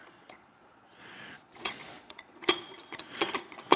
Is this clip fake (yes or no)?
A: yes